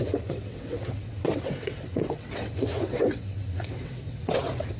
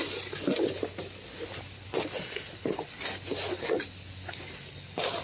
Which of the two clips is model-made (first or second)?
first